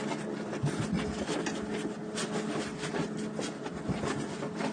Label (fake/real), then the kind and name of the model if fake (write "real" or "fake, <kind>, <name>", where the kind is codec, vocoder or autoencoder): real